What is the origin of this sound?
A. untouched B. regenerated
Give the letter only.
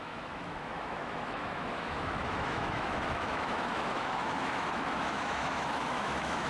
B